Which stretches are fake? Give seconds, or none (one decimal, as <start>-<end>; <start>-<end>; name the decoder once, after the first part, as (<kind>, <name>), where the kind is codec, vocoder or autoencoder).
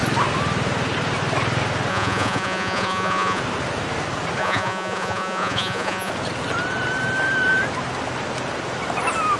1.9-3.4 (vocoder, Vocos); 4.4-6.1